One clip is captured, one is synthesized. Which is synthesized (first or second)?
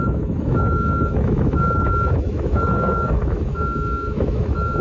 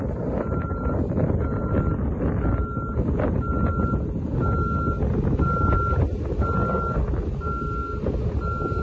first